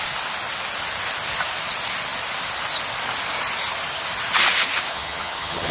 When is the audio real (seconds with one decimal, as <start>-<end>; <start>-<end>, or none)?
0.0-4.9